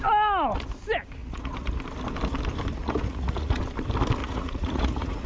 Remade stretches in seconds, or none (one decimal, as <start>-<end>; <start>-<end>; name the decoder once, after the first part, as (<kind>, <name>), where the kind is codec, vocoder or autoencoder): 1.2-1.7 (vocoder, Vocos); 2.7-3.6; 4.2-5.3